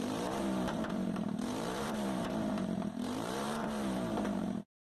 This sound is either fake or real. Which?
fake